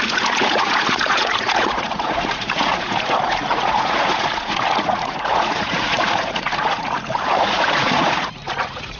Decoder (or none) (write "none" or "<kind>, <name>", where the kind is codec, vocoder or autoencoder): vocoder, Vocos